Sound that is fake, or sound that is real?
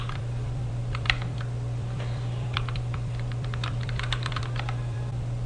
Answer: fake